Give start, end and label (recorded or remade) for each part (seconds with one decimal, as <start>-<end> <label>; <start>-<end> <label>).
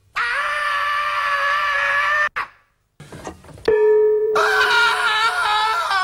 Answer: 0.0-2.3 remade; 2.3-4.2 recorded; 4.2-4.9 remade; 4.9-6.0 recorded